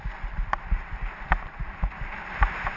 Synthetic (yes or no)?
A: no